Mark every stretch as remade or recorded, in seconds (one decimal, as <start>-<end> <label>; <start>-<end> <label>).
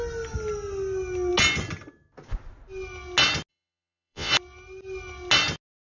0.0-3.5 recorded; 3.5-4.3 remade; 4.3-5.8 recorded